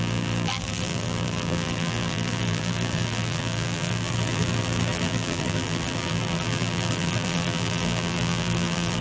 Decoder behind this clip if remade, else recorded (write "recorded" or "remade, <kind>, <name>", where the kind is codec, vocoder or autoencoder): remade, vocoder, BigVGAN v2